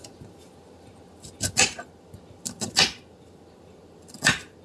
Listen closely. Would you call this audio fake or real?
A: real